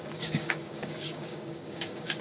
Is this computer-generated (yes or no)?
yes